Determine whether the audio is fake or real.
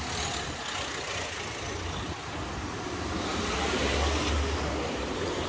real